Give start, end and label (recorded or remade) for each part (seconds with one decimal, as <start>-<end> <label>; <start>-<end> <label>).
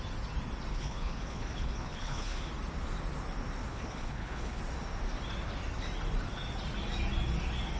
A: 0.0-0.7 recorded; 0.7-2.5 remade; 2.5-3.7 recorded; 3.7-4.6 remade; 4.6-7.8 recorded